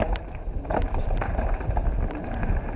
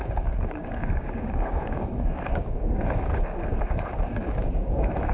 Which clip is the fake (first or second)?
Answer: second